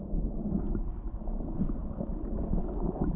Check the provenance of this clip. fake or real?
real